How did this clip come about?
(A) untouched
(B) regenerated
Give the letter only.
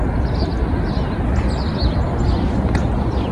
A